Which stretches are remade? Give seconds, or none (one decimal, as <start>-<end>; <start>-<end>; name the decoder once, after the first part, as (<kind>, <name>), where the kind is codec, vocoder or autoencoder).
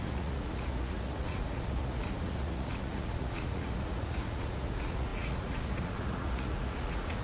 0.0-7.2 (vocoder, Vocos)